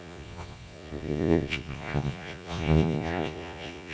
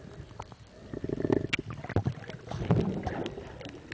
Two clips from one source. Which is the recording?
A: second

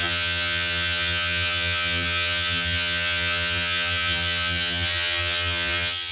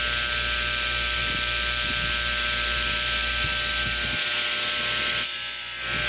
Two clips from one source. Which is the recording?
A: second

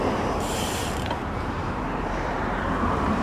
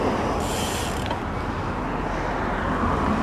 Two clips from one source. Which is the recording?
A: second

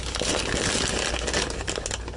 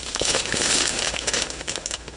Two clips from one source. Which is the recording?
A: first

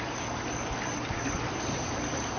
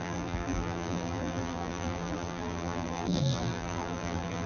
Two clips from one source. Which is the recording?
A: first